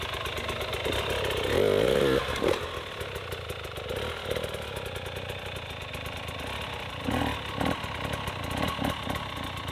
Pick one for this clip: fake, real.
real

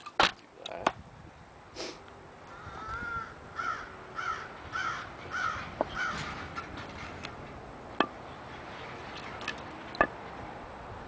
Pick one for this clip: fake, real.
real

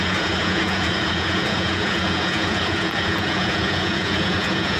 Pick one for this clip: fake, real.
fake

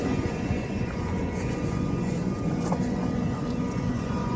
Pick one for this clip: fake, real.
fake